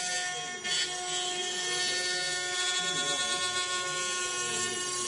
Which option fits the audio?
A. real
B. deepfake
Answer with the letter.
A